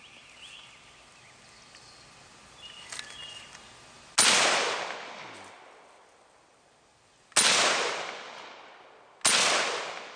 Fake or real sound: real